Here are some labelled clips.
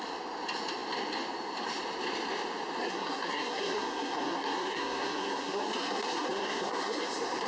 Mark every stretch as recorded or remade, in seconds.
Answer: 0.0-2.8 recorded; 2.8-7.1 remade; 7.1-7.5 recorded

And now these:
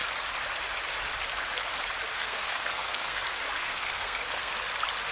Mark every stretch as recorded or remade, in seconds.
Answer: 0.0-2.1 recorded; 2.1-3.2 remade; 3.2-3.6 recorded; 3.6-4.5 remade; 4.5-5.1 recorded

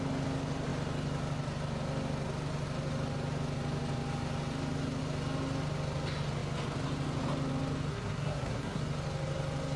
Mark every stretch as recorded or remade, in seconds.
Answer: 0.0-7.9 recorded; 7.9-8.8 remade; 8.8-9.8 recorded

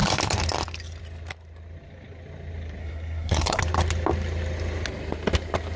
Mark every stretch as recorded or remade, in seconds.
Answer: 0.0-2.8 recorded; 2.8-3.6 remade; 3.6-5.8 recorded